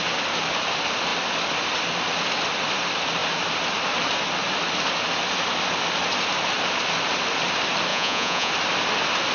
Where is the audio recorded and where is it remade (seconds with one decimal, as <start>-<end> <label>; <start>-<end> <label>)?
0.0-7.9 recorded; 7.9-8.5 remade; 8.5-9.3 recorded